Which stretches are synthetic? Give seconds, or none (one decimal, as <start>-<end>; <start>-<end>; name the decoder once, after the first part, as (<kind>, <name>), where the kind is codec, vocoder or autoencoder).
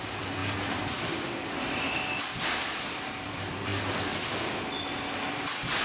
0.0-0.4 (vocoder, BigVGAN v2); 0.9-3.7; 5.3-5.8